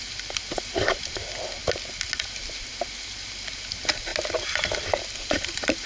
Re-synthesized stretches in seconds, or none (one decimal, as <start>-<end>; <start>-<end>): none